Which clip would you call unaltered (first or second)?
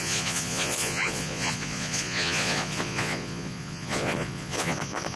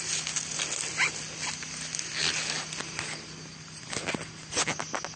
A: second